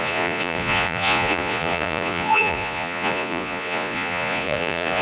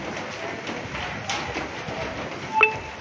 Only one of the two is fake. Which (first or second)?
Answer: first